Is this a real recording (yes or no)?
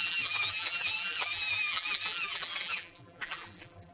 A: no